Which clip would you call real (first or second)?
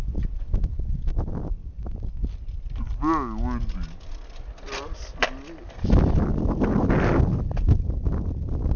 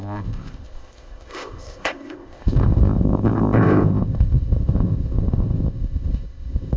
first